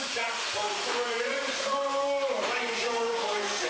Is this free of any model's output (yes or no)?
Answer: no